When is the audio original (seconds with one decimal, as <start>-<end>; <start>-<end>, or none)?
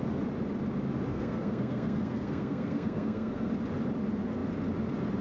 0.0-1.1; 3.5-5.2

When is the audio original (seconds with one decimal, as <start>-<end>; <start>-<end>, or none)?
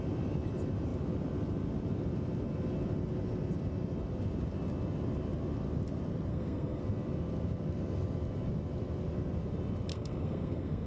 0.0-6.3; 6.8-9.9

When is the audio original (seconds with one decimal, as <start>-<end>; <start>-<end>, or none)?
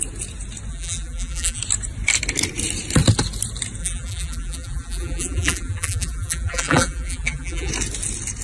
0.0-0.7; 1.6-3.8; 7.7-8.4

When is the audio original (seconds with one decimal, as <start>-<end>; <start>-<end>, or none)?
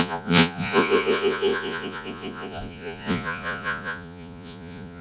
none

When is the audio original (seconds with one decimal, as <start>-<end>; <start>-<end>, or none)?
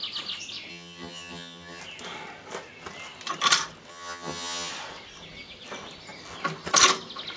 0.0-0.7; 1.8-3.9; 4.7-7.4